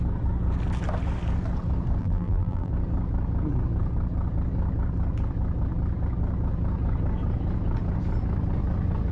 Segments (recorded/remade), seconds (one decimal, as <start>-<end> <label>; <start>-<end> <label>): 0.0-2.0 recorded; 2.0-2.7 remade; 2.7-9.1 recorded